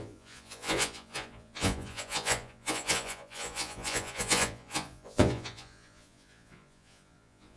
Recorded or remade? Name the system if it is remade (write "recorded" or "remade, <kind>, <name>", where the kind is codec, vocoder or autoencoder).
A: remade, vocoder, Vocos